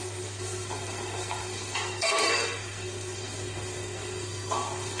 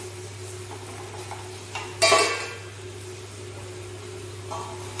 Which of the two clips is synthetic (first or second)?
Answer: first